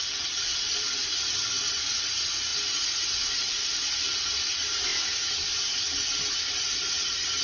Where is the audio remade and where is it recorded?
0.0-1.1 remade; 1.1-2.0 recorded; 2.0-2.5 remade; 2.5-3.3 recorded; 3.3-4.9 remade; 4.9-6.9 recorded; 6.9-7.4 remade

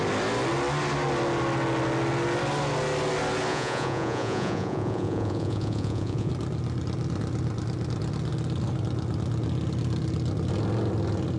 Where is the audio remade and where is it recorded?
0.0-3.5 recorded; 3.5-6.3 remade; 6.3-11.4 recorded

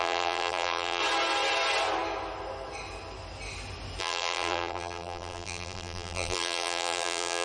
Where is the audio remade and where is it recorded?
0.0-1.0 remade; 1.0-4.0 recorded; 4.0-7.4 remade

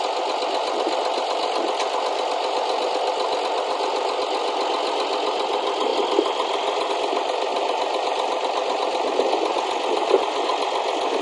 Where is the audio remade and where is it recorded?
0.0-11.2 recorded

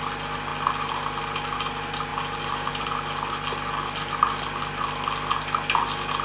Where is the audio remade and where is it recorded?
0.0-6.2 recorded

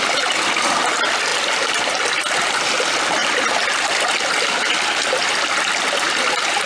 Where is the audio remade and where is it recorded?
0.0-6.7 recorded

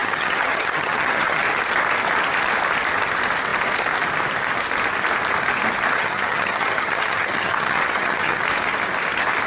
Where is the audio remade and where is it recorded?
0.0-1.4 remade; 1.4-5.9 recorded; 5.9-8.4 remade; 8.4-9.5 recorded

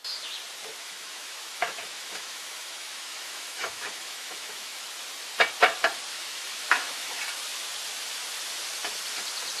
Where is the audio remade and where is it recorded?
0.0-0.8 recorded; 0.8-4.8 remade; 4.8-6.1 recorded; 6.1-7.2 remade; 7.2-9.6 recorded